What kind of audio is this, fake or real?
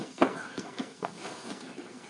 fake